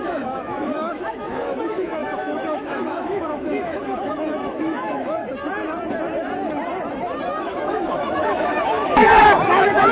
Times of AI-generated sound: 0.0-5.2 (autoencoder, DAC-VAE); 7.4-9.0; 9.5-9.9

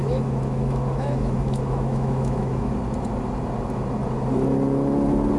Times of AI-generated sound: 0.0-2.7 (autoencoder, DAC-VAE)